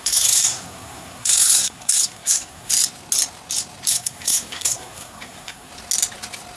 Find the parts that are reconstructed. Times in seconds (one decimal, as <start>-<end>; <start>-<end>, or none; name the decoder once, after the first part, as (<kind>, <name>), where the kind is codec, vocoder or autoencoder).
0.0-2.7 (codec, SNAC); 3.9-5.7